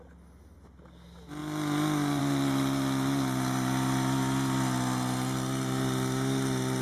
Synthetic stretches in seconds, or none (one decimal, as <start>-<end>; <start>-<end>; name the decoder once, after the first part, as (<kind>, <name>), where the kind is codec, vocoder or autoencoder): none